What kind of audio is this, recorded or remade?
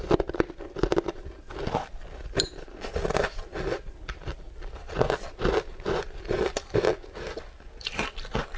recorded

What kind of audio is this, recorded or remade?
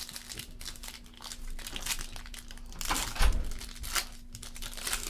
recorded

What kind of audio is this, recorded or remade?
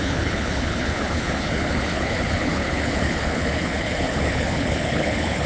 remade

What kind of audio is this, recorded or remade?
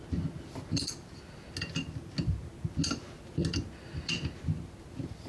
recorded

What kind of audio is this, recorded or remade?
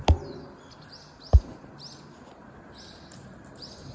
recorded